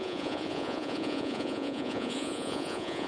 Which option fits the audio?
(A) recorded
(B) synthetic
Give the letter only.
B